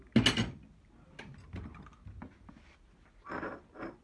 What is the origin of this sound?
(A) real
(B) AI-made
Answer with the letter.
A